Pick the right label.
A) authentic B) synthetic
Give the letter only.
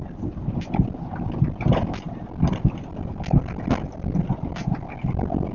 A